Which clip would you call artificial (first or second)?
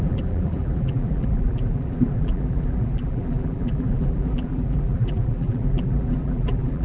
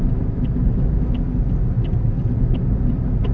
first